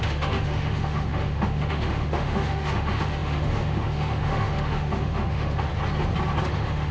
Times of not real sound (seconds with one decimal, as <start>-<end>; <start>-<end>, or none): 0.0-5.7; 6.4-6.9